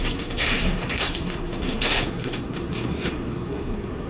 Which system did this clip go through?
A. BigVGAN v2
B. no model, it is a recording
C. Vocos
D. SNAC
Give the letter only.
D